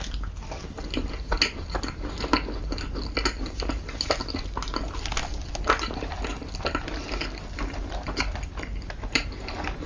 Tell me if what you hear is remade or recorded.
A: recorded